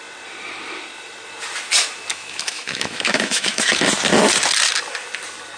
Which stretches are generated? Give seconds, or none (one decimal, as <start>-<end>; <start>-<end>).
2.1-3.8